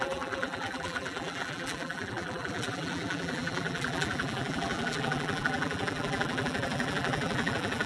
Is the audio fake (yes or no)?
yes